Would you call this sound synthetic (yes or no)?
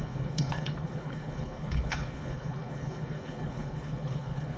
yes